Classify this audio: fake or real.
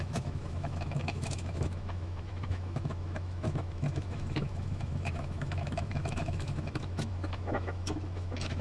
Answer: fake